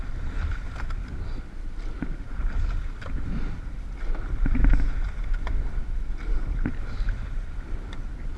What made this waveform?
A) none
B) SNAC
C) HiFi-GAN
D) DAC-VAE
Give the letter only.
A